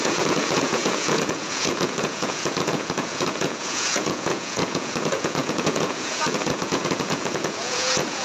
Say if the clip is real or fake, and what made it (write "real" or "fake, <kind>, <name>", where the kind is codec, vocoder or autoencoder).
fake, vocoder, Vocos